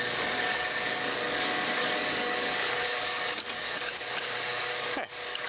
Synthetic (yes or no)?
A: yes